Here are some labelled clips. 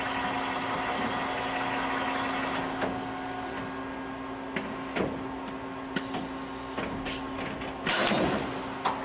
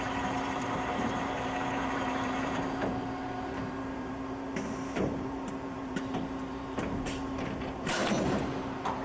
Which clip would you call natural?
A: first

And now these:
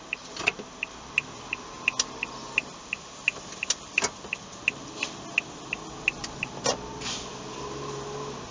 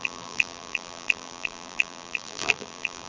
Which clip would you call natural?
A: first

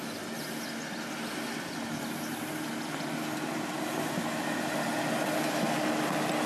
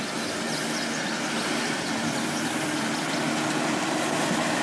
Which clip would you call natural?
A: first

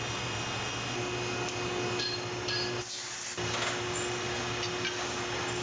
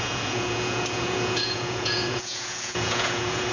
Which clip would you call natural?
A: first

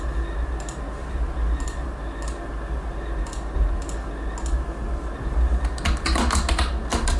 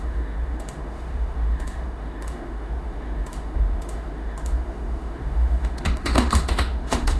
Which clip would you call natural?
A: first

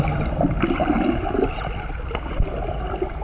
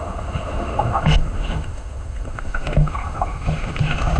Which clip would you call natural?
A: first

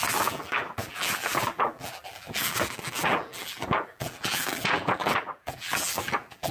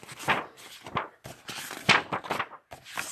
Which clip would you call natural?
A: second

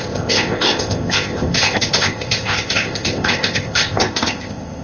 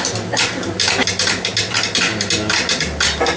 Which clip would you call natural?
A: second